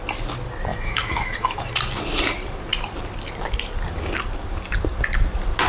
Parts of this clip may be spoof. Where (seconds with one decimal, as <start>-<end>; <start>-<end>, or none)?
0.7-1.7